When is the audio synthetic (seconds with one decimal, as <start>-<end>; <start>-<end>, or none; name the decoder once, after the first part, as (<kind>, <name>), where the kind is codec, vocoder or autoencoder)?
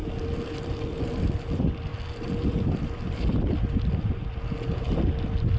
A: none